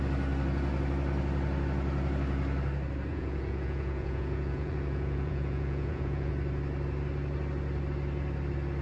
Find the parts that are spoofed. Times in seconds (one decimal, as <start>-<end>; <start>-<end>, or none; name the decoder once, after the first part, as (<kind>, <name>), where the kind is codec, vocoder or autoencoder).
3.1-6.3 (vocoder, Vocos)